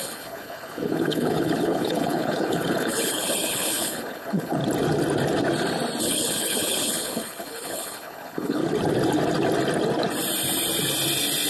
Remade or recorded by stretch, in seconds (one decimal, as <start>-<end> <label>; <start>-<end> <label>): 0.0-4.6 remade; 4.6-6.0 recorded; 6.0-8.6 remade; 8.6-11.5 recorded